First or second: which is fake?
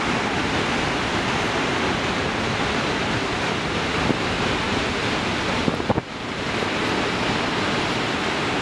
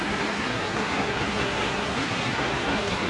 second